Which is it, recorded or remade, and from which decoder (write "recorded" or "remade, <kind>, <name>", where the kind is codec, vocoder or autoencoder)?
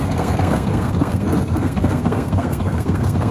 remade, codec, SNAC